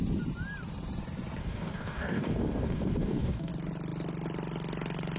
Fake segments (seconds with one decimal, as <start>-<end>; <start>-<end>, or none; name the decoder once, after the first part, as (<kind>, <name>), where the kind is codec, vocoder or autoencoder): 1.4-3.5 (codec, DAC)